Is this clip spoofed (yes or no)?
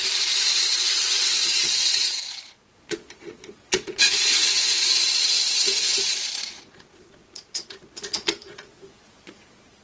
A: yes